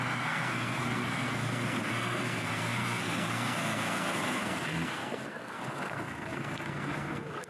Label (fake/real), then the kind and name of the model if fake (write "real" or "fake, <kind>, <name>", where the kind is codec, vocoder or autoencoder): fake, codec, SNAC